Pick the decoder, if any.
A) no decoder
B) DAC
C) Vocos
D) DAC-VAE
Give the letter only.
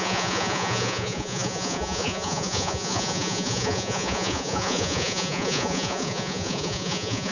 C